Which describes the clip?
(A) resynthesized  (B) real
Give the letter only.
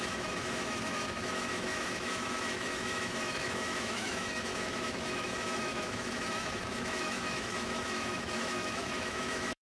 A